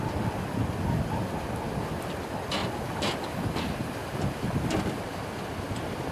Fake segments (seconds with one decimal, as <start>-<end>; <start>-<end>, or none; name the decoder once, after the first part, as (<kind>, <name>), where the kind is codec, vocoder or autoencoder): 2.6-3.6 (vocoder, BigVGAN v2); 4.0-6.1